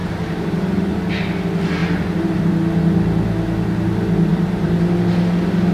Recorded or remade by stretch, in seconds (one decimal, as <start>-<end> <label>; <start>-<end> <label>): 0.0-1.1 remade; 1.1-1.8 recorded; 1.8-2.5 remade; 2.5-4.3 recorded; 4.3-4.8 remade; 4.8-5.7 recorded